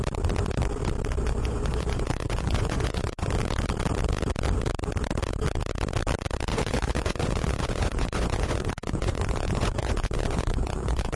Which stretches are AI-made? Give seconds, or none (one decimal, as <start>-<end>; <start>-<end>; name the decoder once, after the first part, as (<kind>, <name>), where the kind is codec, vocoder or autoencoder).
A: 1.2-3.3 (vocoder, Vocos); 6.5-11.2